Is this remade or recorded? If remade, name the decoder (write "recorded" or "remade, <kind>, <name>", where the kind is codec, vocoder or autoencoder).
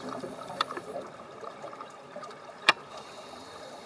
remade, vocoder, BigVGAN v2